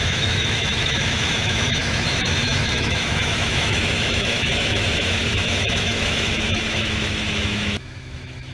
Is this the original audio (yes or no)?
no